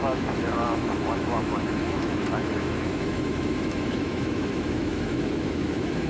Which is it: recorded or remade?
remade